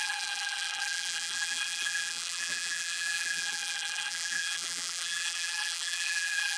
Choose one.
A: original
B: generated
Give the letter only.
B